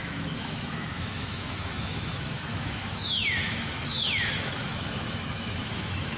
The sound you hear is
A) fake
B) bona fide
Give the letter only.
A